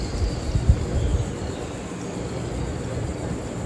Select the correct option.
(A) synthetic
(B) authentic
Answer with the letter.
B